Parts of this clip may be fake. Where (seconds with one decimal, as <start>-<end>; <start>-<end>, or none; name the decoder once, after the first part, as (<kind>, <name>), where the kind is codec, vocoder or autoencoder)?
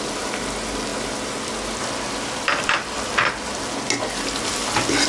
none